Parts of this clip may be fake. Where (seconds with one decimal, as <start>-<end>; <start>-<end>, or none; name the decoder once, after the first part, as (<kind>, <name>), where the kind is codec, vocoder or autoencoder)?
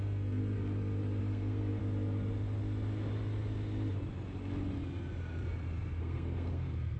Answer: 0.0-0.4 (codec, SNAC); 1.2-1.8; 6.0-7.0